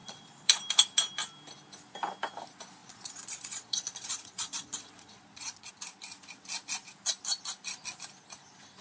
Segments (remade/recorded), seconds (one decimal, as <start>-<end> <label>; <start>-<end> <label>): 0.0-0.6 remade; 0.6-2.8 recorded; 2.8-5.7 remade; 5.7-8.8 recorded